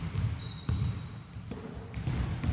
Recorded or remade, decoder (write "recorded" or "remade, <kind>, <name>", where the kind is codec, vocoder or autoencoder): recorded